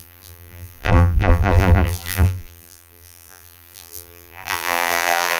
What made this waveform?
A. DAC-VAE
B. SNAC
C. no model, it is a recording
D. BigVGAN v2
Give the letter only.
D